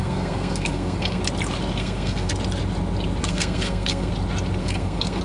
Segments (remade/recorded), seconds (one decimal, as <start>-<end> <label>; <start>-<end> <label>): 0.0-1.2 remade; 1.2-1.8 recorded; 1.8-2.3 remade; 2.3-3.2 recorded; 3.2-4.1 remade; 4.1-4.6 recorded; 4.6-5.2 remade